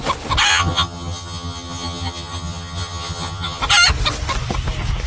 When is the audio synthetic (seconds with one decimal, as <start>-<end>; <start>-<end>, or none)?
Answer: 0.5-3.6